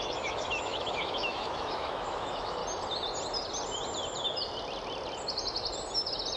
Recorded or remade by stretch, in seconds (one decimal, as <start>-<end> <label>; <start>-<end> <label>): 0.0-2.6 remade; 2.6-6.4 recorded